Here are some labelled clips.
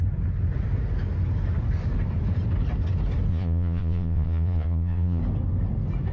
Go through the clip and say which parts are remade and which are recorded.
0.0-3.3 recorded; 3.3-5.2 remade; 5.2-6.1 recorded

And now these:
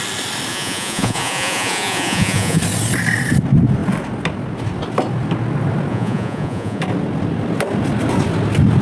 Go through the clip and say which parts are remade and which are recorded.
0.0-0.5 recorded; 0.5-2.6 remade; 2.6-5.9 recorded; 5.9-6.8 remade; 6.8-8.8 recorded

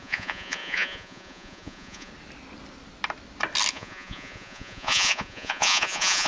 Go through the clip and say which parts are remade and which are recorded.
0.0-2.1 remade; 2.1-3.7 recorded; 3.7-6.3 remade